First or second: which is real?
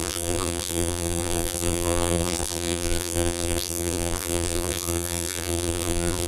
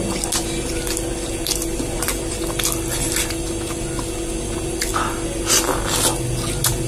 second